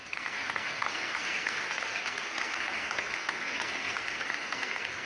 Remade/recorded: remade